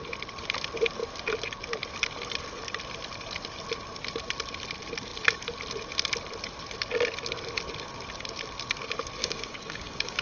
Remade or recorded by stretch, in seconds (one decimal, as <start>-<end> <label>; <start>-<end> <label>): 0.0-9.2 recorded; 9.2-10.2 remade